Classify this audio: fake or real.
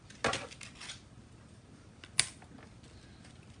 real